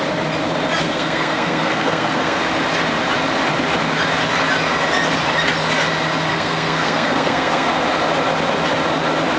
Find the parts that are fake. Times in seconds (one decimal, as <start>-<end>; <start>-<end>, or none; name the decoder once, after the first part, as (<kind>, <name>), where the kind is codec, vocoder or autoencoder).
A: 0.8-2.4 (codec, SNAC); 6.3-7.7